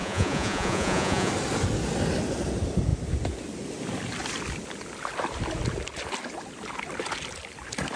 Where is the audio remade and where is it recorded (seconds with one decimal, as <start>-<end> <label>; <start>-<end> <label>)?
0.0-1.3 remade; 1.3-8.0 recorded